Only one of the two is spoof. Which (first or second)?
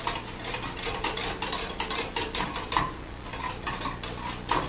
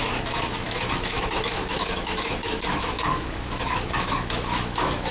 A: second